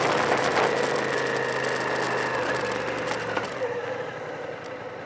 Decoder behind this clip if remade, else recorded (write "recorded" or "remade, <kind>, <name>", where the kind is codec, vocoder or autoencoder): recorded